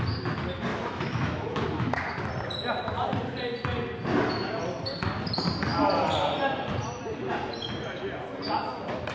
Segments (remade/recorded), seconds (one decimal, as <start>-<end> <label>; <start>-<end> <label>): 0.0-0.7 recorded; 0.7-2.3 remade; 2.3-9.1 recorded